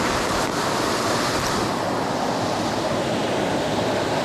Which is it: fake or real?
real